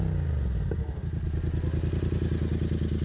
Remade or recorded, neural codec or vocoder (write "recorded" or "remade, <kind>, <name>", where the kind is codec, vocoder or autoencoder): recorded